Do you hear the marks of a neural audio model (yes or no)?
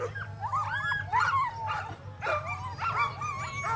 no